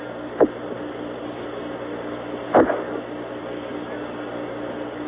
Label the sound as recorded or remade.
recorded